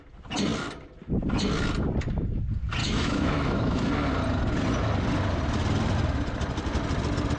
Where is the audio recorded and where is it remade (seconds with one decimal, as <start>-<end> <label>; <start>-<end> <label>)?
0.0-2.8 recorded; 2.8-3.9 remade; 3.9-7.4 recorded